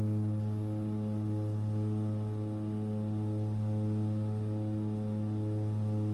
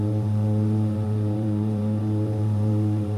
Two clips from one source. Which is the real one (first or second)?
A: first